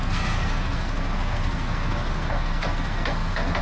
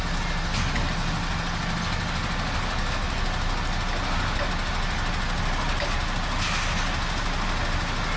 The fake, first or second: first